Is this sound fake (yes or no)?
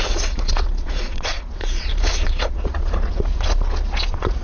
yes